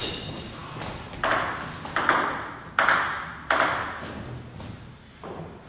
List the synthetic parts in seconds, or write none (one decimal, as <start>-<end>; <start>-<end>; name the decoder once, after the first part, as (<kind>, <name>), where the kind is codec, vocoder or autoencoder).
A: none